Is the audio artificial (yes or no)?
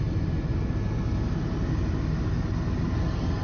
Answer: no